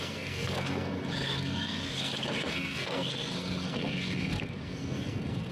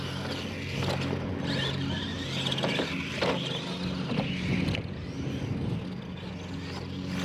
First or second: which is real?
second